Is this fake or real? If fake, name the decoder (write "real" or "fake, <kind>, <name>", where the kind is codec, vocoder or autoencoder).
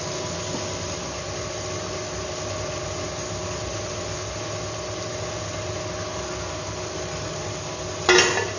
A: real